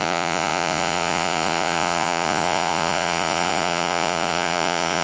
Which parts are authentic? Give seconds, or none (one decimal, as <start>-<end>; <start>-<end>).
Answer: none